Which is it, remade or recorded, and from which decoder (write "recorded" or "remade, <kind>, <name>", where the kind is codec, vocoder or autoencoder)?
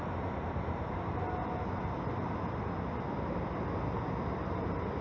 recorded